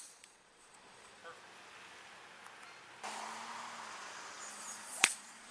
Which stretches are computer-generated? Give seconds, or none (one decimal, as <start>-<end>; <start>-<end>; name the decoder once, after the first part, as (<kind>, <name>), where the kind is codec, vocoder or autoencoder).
0.0-1.2 (vocoder, Vocos); 4.5-5.5